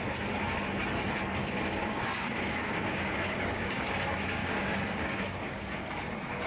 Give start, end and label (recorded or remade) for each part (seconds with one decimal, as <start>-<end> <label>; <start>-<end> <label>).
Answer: 0.0-1.4 recorded; 1.4-3.9 remade; 3.9-4.4 recorded; 4.4-5.8 remade; 5.8-6.5 recorded